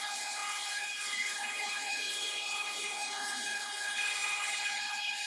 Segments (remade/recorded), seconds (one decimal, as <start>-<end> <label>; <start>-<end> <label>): 0.0-5.3 remade